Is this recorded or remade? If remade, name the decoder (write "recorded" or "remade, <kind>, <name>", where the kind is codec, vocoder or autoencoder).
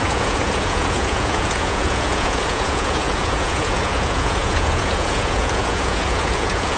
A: remade, vocoder, Vocos